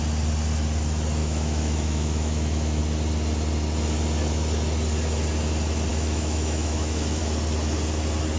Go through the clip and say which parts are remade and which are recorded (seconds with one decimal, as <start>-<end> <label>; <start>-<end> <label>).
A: 0.0-1.2 recorded; 1.2-2.8 remade; 2.8-5.9 recorded; 5.9-7.2 remade; 7.2-8.4 recorded